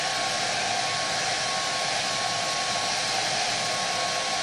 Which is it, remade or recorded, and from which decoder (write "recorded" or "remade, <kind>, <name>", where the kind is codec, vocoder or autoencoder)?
recorded